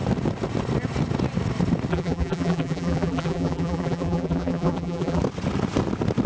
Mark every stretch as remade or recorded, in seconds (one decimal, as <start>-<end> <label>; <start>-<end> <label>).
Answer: 0.0-1.9 recorded; 1.9-5.2 remade; 5.2-6.3 recorded